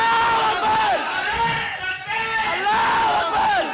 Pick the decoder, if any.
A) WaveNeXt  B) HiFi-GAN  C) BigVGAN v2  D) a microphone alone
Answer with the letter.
D